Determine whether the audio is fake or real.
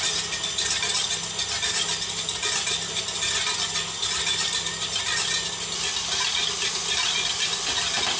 real